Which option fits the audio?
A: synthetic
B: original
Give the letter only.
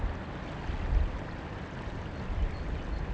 B